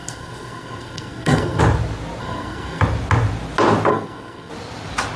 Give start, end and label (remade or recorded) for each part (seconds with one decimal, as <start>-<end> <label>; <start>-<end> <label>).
0.0-1.6 remade; 1.6-2.2 recorded; 2.2-2.8 remade; 2.8-3.9 recorded; 3.9-4.5 remade; 4.5-5.2 recorded